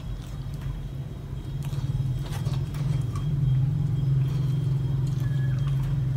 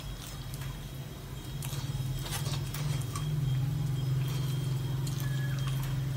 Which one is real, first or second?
second